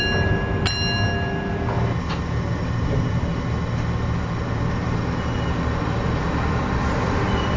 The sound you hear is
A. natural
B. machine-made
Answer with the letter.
A